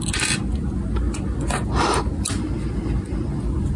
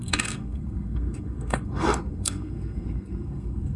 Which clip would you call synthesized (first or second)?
second